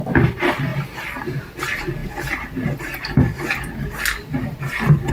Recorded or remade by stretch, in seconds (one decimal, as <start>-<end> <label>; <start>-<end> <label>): 0.0-5.1 recorded